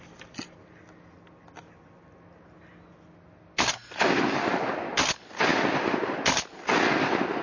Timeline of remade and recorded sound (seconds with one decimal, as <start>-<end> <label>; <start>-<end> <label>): 0.0-7.4 recorded